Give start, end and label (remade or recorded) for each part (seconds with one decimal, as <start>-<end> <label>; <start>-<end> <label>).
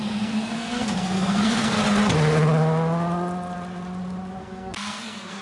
0.0-1.8 remade; 1.8-4.4 recorded; 4.4-5.4 remade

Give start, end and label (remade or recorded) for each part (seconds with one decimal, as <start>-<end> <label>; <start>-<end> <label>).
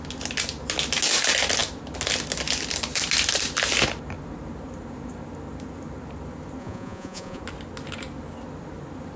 0.0-6.6 recorded; 6.6-7.4 remade; 7.4-9.2 recorded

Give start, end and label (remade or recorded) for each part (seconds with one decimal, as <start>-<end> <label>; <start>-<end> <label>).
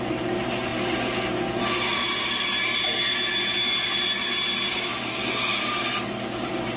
0.0-6.8 recorded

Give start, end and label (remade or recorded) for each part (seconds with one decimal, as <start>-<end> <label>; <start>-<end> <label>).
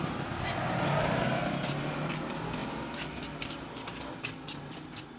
0.0-5.2 recorded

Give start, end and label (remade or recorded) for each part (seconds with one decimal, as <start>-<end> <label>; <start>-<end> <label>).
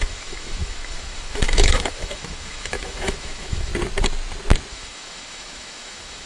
0.0-3.7 remade; 3.7-4.7 recorded; 4.7-6.3 remade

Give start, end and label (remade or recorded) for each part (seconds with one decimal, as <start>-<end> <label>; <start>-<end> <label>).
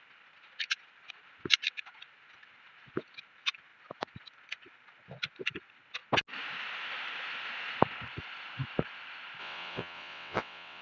0.0-9.4 recorded; 9.4-10.8 remade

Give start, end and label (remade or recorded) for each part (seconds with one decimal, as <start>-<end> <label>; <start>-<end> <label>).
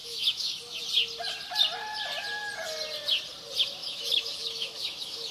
0.0-0.8 remade; 0.8-3.8 recorded; 3.8-5.3 remade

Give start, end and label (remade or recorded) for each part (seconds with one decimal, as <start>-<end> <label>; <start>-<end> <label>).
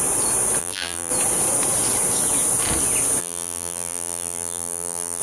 0.0-0.6 recorded; 0.6-1.1 remade; 1.1-3.2 recorded; 3.2-5.2 remade